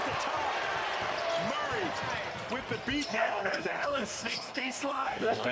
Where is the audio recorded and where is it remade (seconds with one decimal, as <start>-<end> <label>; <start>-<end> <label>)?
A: 0.0-3.1 recorded; 3.1-5.5 remade